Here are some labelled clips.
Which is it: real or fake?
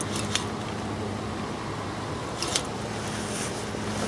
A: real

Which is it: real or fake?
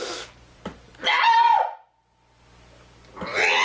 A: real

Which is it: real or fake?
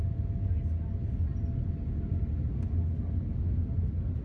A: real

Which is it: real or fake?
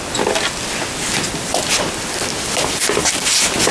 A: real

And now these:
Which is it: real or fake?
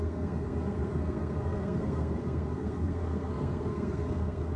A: fake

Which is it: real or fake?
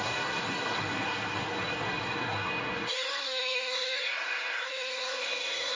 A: fake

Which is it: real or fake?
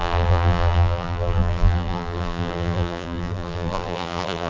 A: fake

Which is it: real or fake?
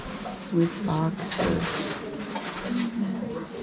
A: real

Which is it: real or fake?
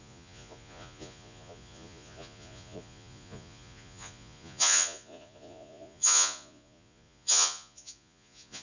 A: fake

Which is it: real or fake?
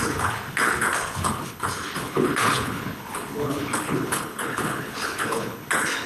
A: fake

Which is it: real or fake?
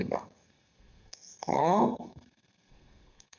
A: fake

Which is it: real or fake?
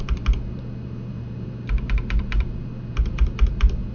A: fake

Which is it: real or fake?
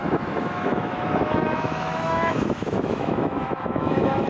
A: fake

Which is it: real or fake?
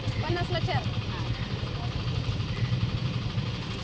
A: fake